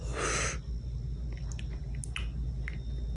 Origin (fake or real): real